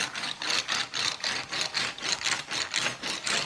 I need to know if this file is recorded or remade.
recorded